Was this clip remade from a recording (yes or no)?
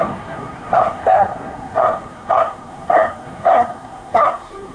yes